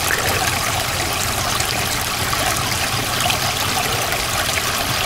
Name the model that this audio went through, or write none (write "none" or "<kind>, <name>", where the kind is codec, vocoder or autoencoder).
none